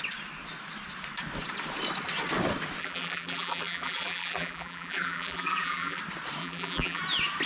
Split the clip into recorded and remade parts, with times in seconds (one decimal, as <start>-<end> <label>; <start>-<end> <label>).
0.0-2.8 recorded; 2.8-6.0 remade; 6.0-6.4 recorded; 6.4-7.0 remade; 7.0-7.5 recorded